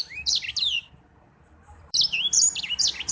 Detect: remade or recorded remade